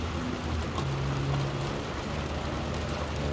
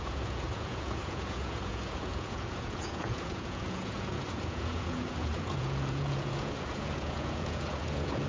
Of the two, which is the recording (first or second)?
first